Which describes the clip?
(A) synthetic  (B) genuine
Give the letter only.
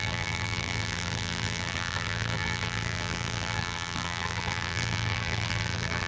A